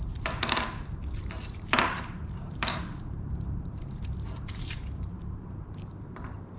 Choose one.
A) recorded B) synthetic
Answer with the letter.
B